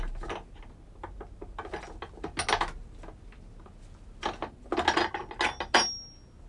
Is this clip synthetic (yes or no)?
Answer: no